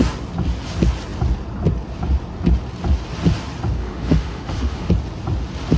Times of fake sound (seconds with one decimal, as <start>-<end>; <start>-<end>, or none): 3.8-4.9

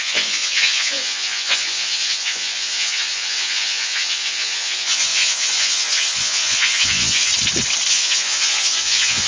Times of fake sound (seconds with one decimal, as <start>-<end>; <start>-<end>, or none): 0.0-7.3; 7.9-9.3

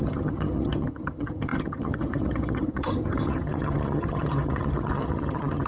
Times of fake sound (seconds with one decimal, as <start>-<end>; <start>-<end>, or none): 0.0-5.7

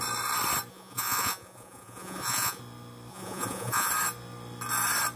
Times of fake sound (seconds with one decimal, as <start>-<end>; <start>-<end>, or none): 0.7-2.6; 3.1-3.9

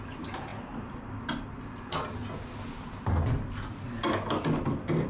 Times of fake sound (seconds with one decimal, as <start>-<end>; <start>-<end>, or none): none

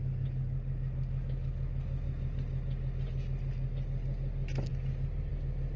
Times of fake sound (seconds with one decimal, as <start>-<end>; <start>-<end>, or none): none

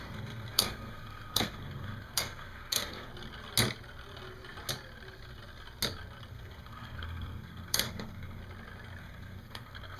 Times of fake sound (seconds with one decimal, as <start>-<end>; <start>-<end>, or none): 0.0-3.1; 6.3-8.4; 9.0-10.0